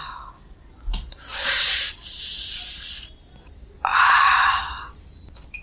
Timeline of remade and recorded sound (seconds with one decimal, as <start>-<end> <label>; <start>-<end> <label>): 0.0-1.3 recorded; 1.3-2.6 remade; 2.6-3.9 recorded; 3.9-4.6 remade; 4.6-5.6 recorded